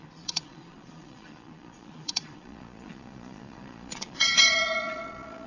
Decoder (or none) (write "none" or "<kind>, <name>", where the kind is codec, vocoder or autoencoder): vocoder, Vocos